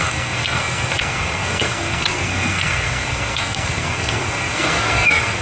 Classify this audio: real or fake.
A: fake